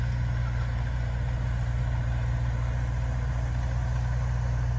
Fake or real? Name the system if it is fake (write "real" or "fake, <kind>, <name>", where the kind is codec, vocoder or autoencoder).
real